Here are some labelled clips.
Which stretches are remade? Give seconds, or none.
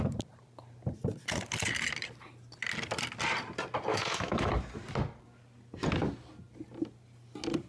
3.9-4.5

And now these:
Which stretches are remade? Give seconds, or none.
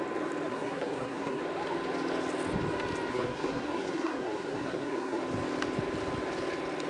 0.5-1.4; 3.1-5.2